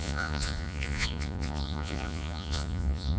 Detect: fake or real fake